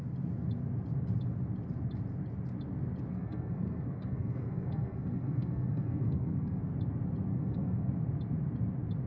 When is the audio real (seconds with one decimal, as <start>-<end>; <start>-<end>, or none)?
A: 0.0-3.1; 6.7-7.3; 7.9-9.1